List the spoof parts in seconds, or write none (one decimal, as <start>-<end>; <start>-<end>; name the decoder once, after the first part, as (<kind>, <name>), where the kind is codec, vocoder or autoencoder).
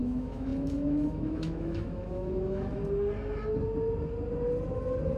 0.0-2.8 (autoencoder, DAC-VAE)